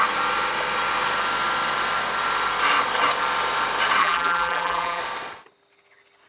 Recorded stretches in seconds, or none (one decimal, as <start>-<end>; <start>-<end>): 0.0-4.0; 5.0-6.3